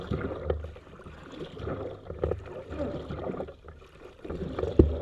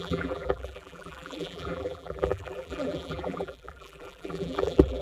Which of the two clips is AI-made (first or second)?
second